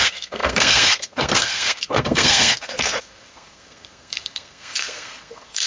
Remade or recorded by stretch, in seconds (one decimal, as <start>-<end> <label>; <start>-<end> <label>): 0.0-5.7 remade